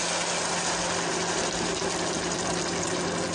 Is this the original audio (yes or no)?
yes